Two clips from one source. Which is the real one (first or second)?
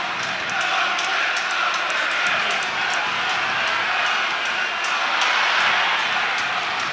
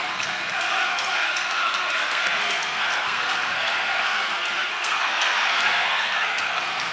first